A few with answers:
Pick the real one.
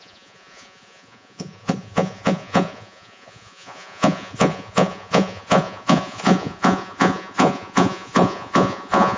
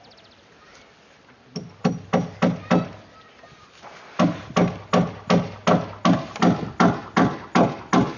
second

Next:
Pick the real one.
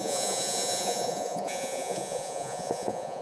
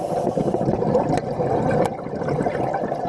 second